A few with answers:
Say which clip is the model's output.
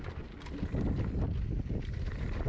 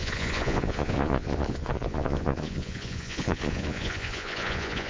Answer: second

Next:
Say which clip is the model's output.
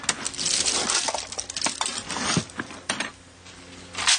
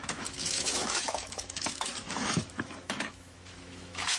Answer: second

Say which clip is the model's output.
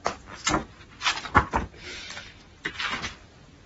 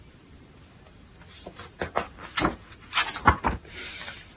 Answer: second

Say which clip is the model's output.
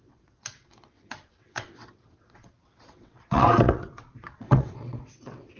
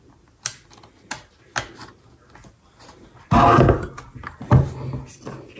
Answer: first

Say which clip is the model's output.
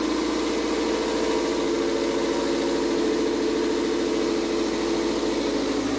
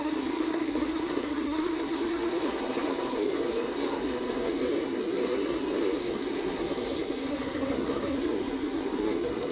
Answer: second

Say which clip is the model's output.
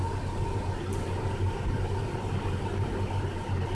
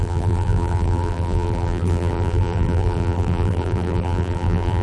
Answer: second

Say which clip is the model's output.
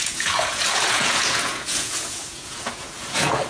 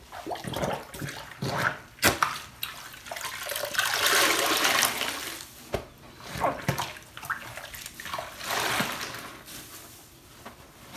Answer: first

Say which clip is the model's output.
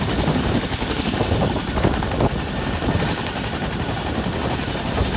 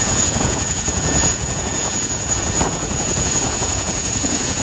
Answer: second